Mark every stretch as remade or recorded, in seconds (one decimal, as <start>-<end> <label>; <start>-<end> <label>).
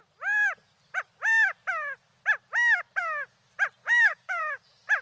0.0-3.8 recorded; 3.8-4.4 remade; 4.4-5.0 recorded